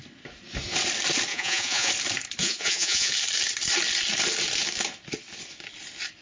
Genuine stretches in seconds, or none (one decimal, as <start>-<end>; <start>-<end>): 0.0-1.3; 1.9-2.4; 3.1-6.2

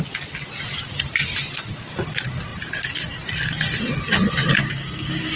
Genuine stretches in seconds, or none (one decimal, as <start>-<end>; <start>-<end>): 0.0-4.6

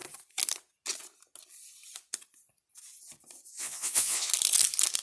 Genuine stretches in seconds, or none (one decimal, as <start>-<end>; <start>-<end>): 0.0-3.5; 4.3-5.0

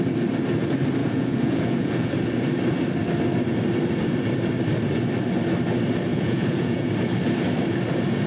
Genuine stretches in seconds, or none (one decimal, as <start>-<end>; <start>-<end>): 0.0-1.0; 2.1-6.1; 6.9-8.3

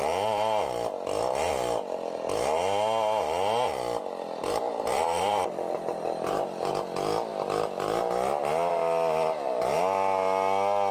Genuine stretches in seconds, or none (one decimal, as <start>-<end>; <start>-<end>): 0.0-4.4; 6.7-10.9

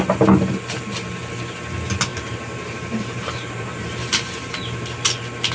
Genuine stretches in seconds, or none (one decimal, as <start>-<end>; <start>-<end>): 0.0-2.1; 4.5-5.5